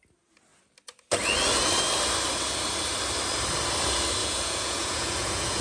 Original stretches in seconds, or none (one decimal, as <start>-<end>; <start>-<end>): 0.0-4.2